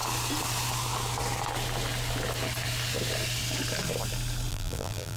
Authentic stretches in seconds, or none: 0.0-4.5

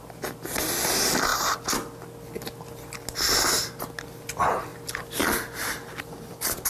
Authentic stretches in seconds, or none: 0.0-6.7

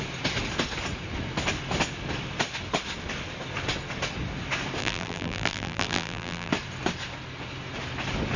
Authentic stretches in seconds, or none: 0.0-4.8; 6.5-8.4